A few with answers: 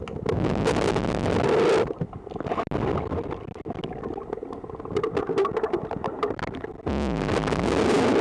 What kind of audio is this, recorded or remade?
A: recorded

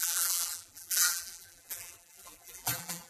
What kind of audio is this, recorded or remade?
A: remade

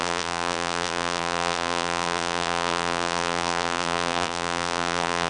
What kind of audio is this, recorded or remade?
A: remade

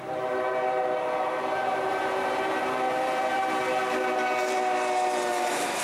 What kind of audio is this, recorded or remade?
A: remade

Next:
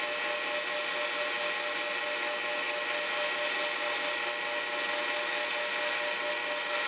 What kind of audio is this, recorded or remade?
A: recorded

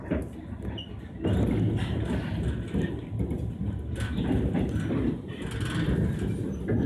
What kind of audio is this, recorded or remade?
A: recorded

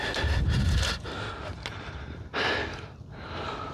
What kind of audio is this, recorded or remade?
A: recorded